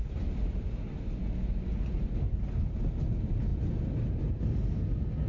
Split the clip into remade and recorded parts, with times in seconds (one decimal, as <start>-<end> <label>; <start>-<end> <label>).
0.0-5.3 recorded